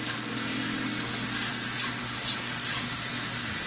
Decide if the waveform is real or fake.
real